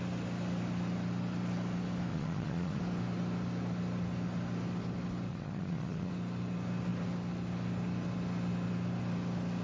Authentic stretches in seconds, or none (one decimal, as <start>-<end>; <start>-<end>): 0.0-2.1; 2.8-5.3; 6.1-9.6